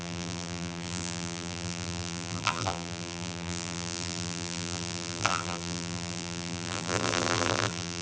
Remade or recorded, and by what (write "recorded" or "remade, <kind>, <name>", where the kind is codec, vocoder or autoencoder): remade, vocoder, BigVGAN v2